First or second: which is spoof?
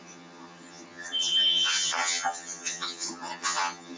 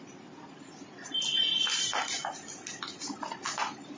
first